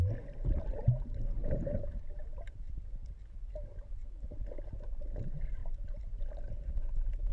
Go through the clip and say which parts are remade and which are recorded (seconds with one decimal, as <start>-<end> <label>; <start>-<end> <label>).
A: 0.0-7.3 recorded